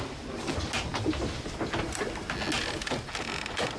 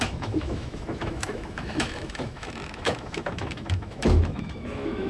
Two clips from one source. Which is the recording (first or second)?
first